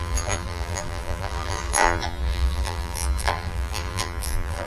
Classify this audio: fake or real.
fake